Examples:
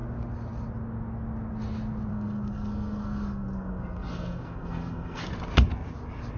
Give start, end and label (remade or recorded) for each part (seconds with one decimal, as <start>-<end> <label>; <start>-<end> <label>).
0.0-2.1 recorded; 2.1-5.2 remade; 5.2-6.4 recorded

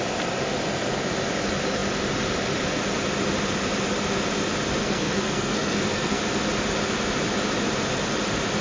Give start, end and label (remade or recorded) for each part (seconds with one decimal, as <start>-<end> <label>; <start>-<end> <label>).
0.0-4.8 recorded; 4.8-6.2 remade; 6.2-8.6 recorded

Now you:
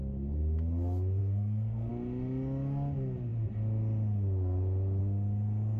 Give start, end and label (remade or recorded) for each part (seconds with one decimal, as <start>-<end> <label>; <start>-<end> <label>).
0.0-1.2 recorded; 1.2-1.9 remade; 1.9-5.8 recorded

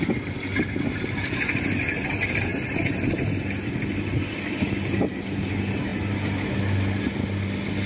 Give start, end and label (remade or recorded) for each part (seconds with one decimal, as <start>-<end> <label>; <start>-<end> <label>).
0.0-7.9 recorded

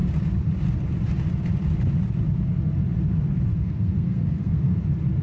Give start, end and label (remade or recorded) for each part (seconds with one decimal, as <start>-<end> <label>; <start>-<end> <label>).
0.0-3.5 recorded; 3.5-4.8 remade; 4.8-5.2 recorded

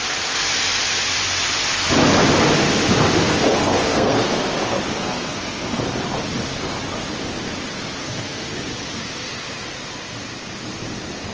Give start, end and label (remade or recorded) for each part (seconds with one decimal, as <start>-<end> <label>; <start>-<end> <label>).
0.0-3.5 recorded; 3.5-4.5 remade; 4.5-5.0 recorded; 5.0-5.8 remade; 5.8-8.0 recorded; 8.0-8.5 remade; 8.5-11.3 recorded